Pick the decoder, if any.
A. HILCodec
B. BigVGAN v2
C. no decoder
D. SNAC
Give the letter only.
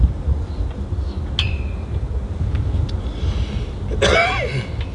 C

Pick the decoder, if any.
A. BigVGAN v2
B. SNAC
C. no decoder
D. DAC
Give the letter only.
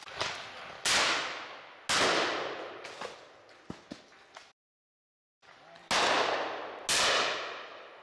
C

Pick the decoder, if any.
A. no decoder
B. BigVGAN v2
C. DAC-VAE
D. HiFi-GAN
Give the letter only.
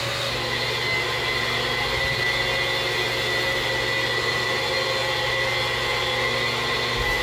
A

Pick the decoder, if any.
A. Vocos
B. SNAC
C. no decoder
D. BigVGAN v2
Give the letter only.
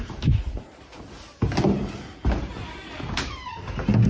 C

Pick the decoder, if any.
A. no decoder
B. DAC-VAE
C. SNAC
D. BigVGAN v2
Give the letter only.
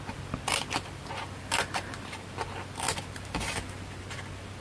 D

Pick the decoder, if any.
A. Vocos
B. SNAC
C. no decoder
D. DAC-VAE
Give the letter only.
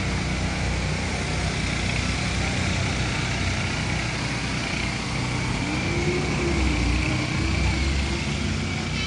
C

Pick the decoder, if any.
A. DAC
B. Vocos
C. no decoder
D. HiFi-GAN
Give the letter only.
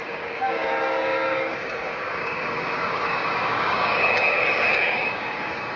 A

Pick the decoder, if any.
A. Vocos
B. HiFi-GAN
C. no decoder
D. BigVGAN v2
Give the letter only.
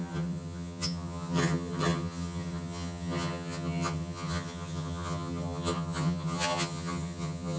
B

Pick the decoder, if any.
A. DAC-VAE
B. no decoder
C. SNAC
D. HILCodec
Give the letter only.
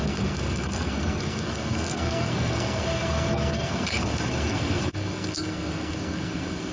C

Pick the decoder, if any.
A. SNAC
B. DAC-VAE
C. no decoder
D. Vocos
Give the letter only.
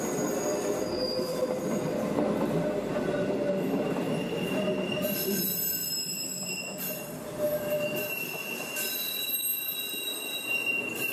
C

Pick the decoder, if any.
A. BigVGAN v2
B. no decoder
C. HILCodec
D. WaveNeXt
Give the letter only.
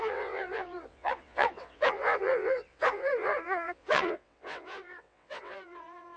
D